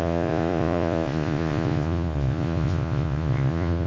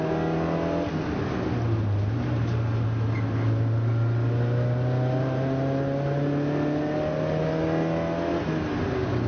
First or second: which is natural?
second